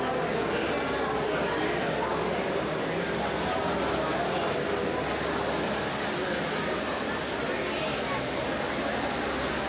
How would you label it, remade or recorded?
recorded